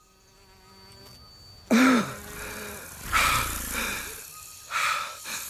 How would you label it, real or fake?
real